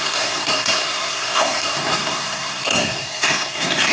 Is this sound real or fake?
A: fake